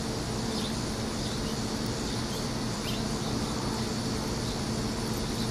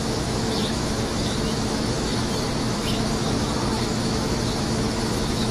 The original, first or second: first